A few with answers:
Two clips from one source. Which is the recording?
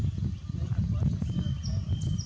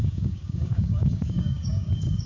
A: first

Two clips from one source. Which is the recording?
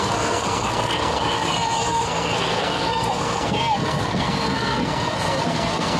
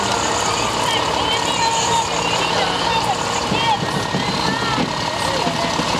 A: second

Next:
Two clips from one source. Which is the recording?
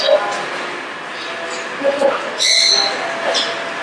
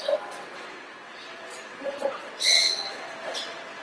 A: first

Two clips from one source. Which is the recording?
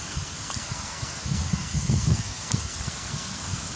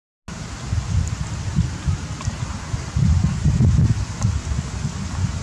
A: second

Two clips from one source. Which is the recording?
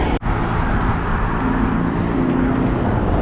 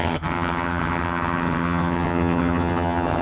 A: first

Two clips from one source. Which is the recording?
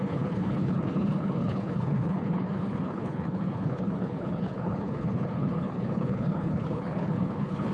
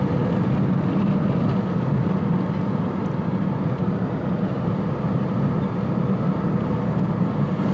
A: second